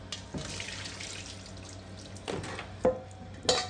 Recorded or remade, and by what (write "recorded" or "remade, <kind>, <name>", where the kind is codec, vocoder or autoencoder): recorded